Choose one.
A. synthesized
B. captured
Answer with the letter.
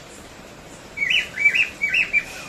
A